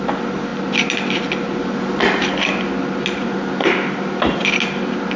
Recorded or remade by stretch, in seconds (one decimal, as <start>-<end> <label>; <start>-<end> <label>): 0.0-5.2 recorded